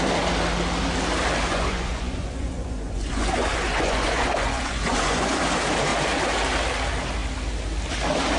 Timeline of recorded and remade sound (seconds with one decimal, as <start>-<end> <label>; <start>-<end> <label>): 0.0-1.5 recorded; 1.5-5.4 remade; 5.4-8.4 recorded